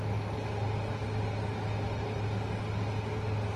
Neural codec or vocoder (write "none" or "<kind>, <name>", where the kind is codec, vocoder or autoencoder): none